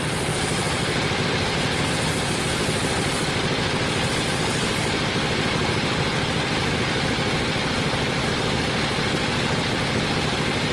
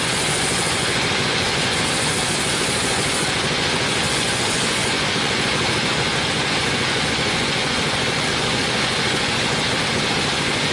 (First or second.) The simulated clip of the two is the second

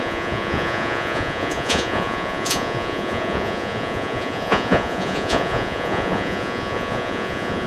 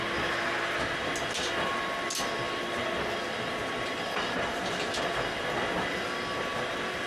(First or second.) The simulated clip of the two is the first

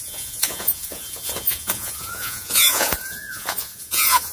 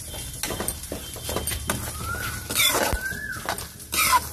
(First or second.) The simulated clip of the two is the first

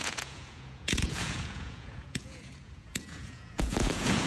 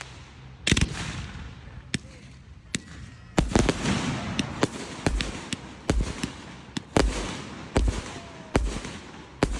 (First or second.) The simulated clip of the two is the first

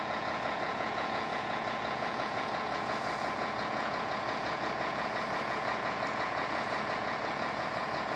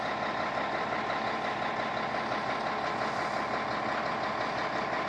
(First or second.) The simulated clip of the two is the first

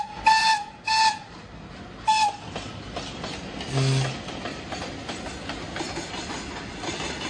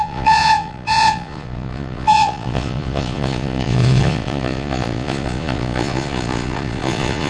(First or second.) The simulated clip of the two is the second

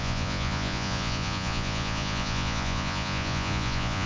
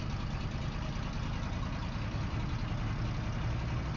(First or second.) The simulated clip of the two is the first